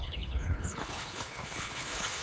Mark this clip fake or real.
fake